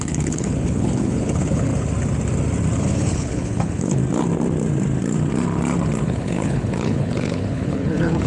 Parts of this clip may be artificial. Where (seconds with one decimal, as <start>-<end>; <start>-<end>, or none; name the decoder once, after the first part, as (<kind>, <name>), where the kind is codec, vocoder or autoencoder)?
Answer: 0.0-1.7 (codec, HILCodec); 2.8-4.0; 6.0-8.3